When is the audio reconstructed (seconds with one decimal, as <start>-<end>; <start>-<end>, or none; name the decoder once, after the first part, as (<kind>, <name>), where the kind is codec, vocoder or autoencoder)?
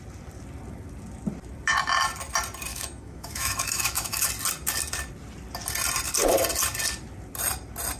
2.7-4.3 (autoencoder, DAC-VAE)